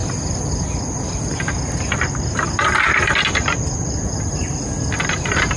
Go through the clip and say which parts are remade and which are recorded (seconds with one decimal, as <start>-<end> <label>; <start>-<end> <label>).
0.0-5.6 recorded